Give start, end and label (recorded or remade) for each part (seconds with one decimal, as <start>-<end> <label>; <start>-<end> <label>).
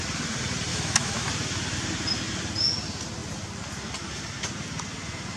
0.0-0.7 recorded; 0.7-1.3 remade; 1.3-5.4 recorded